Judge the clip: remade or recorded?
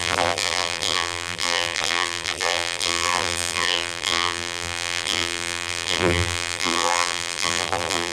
remade